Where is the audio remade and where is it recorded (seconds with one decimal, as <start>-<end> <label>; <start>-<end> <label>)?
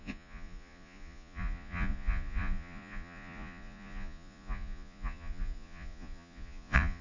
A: 0.0-7.0 remade